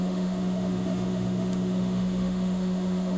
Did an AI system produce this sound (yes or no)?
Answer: yes